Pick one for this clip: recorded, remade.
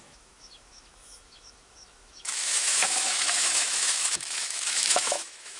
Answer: remade